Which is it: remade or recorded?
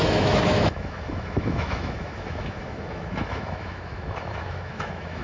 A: remade